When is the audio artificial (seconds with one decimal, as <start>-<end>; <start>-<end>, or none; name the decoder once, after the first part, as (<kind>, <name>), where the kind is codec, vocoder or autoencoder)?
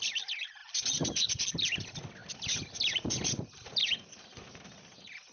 0.6-1.4 (vocoder, BigVGAN v2); 2.2-4.6